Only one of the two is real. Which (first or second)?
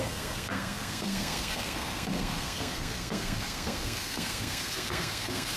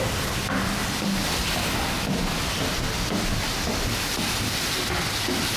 second